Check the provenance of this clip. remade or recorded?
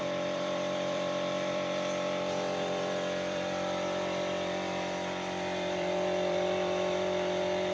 remade